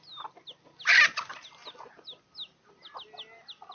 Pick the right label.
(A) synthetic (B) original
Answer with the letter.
B